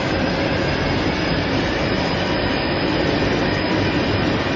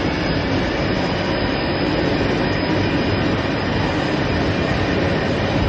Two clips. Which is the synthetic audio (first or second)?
first